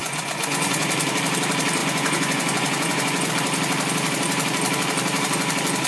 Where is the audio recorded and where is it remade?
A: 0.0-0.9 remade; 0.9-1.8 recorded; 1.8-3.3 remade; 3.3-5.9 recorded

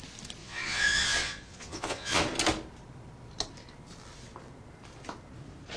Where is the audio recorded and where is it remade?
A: 0.0-0.4 recorded; 0.4-2.2 remade; 2.2-5.8 recorded

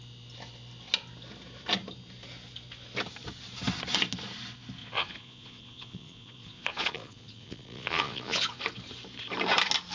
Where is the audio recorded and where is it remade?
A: 0.0-4.8 recorded; 4.8-8.6 remade; 8.6-9.9 recorded

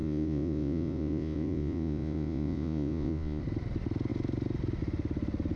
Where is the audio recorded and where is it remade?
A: 0.0-3.4 remade; 3.4-5.6 recorded

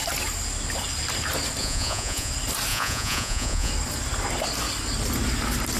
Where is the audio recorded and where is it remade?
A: 0.0-1.6 recorded; 1.6-2.3 remade; 2.3-2.7 recorded; 2.7-3.7 remade; 3.7-5.8 recorded